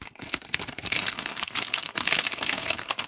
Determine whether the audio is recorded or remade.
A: remade